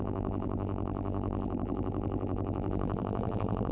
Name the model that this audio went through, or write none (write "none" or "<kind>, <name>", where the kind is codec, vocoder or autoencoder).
vocoder, BigVGAN v2